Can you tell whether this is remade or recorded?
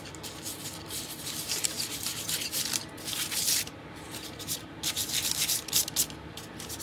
recorded